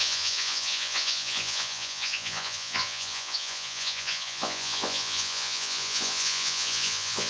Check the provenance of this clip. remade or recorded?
remade